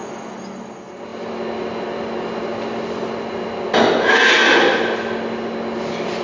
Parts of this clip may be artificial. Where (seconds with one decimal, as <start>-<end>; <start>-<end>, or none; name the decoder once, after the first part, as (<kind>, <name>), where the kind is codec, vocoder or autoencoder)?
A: none